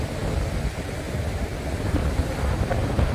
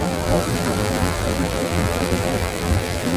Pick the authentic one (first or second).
first